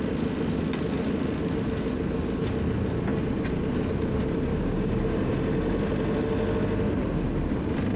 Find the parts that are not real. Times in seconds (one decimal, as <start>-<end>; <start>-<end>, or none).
4.5-5.2